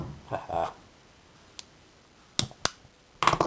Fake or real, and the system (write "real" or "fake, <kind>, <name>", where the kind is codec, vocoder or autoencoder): real